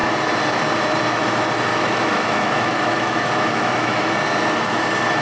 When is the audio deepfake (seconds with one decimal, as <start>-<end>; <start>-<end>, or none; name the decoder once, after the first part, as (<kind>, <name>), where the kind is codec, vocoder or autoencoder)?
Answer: 1.7-4.1 (autoencoder, DAC-VAE)